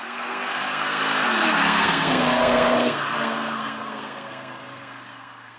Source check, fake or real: fake